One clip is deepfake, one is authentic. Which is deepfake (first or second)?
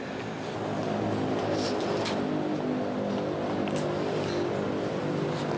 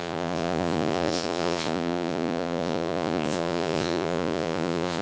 second